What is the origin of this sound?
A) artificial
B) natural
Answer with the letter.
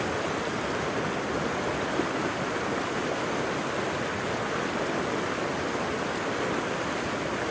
B